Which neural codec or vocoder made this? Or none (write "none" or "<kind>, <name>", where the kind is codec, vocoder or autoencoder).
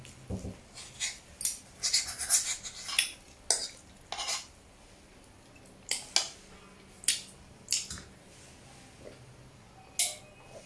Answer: none